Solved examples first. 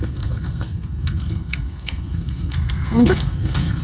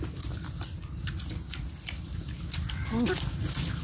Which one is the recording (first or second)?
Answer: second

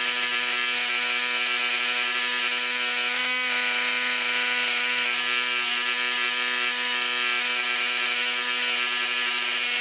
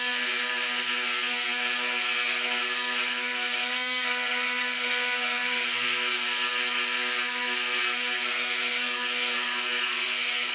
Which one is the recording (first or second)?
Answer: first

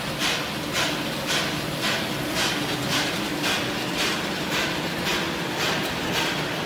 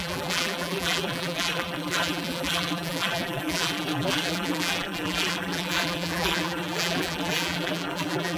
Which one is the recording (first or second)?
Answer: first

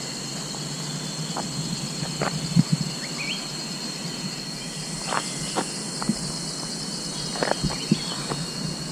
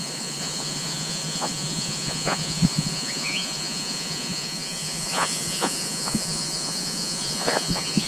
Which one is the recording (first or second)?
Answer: first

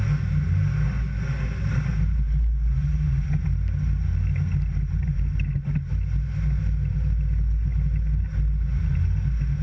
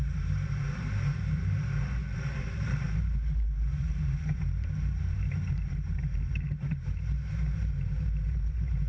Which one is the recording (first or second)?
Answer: first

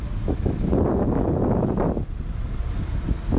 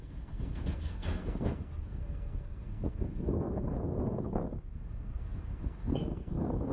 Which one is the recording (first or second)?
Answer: first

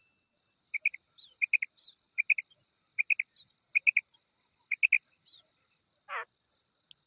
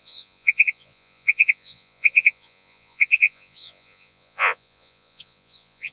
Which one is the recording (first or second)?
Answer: first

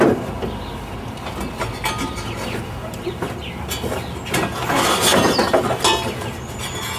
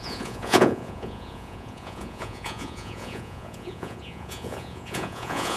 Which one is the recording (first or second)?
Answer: first